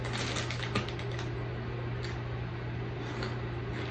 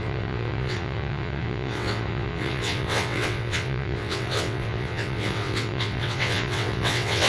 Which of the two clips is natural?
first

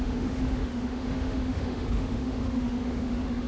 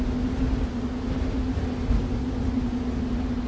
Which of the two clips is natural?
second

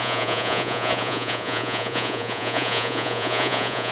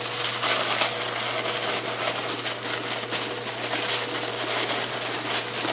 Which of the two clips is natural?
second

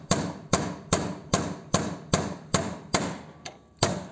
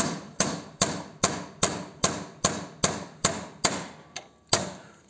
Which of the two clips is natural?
second